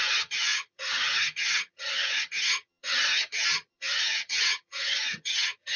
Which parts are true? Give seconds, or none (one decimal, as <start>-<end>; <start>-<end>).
none